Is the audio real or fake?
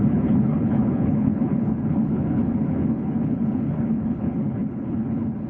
fake